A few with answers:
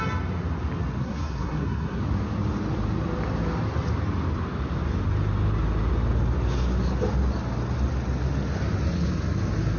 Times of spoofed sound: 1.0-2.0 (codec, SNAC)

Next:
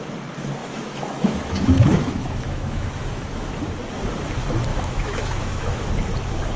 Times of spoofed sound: 0.6-3.6 (autoencoder, DAC-VAE); 4.7-5.9

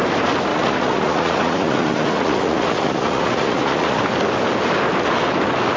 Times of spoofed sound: 0.5-4.0 (vocoder, Vocos)

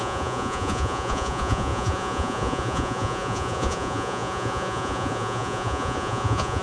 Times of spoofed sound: 0.0-6.6 (vocoder, Vocos)